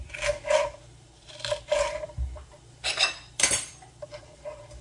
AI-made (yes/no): yes